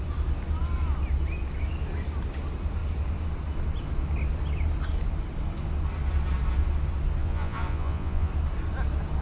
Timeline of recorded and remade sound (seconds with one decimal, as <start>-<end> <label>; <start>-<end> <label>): 0.0-7.2 recorded; 7.2-8.3 remade; 8.3-9.2 recorded